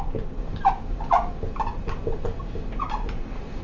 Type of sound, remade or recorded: recorded